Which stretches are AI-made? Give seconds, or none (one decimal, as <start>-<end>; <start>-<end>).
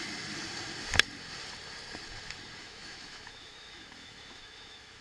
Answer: 2.6-5.0